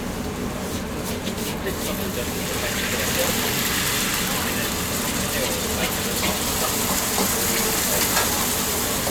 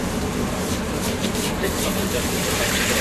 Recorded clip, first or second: first